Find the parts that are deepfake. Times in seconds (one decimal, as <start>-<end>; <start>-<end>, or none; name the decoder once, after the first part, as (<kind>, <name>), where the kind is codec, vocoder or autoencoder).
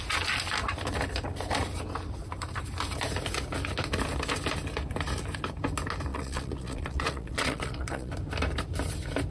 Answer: 6.1-8.1 (vocoder, Vocos)